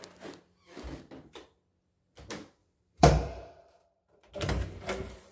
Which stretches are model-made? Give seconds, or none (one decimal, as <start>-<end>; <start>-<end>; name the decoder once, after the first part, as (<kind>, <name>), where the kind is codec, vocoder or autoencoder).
2.6-4.3 (vocoder, BigVGAN v2)